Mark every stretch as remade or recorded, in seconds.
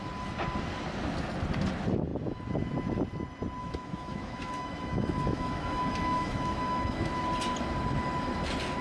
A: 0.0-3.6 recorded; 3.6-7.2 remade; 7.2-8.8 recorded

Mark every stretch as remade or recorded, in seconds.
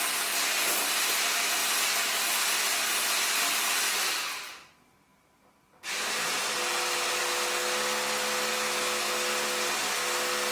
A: 0.0-8.5 recorded; 8.5-9.1 remade; 9.1-10.5 recorded